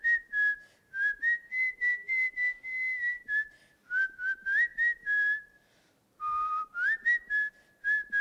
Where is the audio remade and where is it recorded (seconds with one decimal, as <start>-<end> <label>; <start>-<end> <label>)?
0.0-8.2 recorded